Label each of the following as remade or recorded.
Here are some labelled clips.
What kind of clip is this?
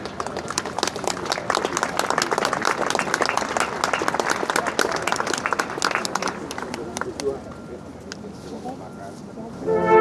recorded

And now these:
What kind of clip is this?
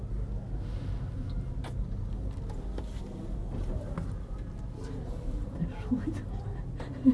recorded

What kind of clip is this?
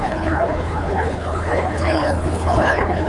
remade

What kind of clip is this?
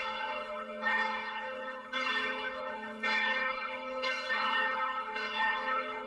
remade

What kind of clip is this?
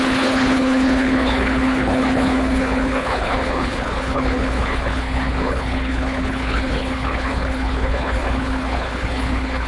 remade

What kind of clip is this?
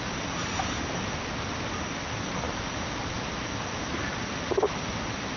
recorded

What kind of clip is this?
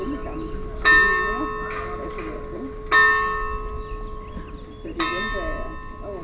recorded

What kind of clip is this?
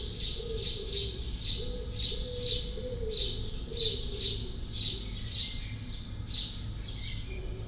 recorded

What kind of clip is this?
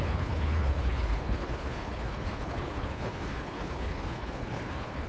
remade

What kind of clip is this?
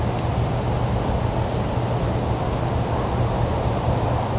recorded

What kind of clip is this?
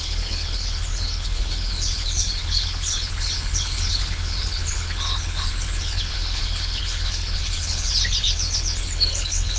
remade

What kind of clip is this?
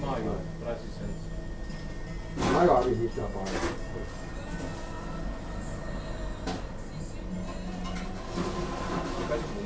recorded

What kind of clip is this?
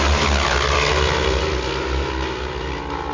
recorded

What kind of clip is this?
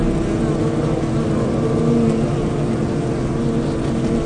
recorded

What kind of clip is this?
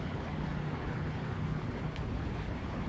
remade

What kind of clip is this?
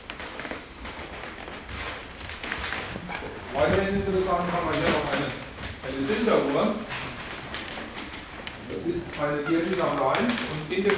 recorded